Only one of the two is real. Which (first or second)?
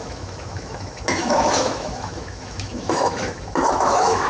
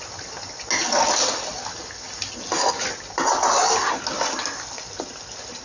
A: second